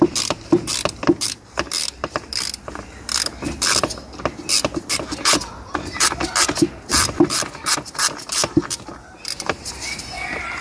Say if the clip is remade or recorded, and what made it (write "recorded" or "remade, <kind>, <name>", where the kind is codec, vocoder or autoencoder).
recorded